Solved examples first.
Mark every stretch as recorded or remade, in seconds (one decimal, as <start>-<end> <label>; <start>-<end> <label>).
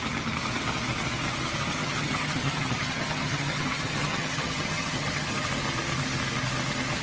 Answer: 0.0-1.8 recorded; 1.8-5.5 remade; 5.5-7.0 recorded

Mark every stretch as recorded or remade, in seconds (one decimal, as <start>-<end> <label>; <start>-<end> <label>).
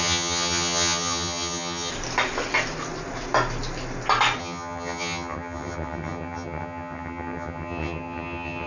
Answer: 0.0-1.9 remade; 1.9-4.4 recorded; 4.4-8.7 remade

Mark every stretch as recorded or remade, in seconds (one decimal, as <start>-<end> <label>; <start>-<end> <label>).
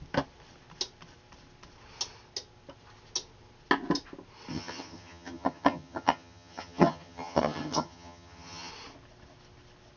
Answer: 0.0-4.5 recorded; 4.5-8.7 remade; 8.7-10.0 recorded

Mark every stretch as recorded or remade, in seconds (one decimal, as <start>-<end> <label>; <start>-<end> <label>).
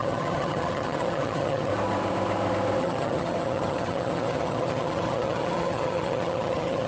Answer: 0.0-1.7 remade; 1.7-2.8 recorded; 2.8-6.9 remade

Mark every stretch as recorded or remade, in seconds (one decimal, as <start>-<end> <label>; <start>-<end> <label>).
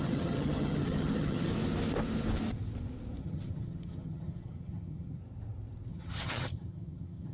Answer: 0.0-1.5 remade; 1.5-3.2 recorded; 3.2-5.2 remade; 5.2-5.9 recorded; 5.9-7.3 remade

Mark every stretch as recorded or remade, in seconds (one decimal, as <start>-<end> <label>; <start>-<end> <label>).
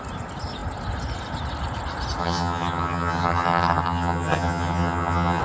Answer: 0.0-2.2 recorded; 2.2-5.4 remade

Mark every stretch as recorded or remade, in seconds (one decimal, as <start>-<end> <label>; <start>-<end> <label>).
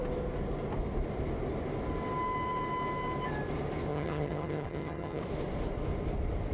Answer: 0.0-3.9 recorded; 3.9-5.2 remade; 5.2-6.5 recorded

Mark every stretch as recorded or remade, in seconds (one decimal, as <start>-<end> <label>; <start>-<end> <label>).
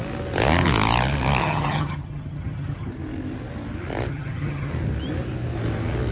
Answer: 0.0-1.4 recorded; 1.4-2.9 remade; 2.9-4.1 recorded; 4.1-4.7 remade; 4.7-6.1 recorded